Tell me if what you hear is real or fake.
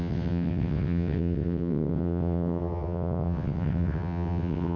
fake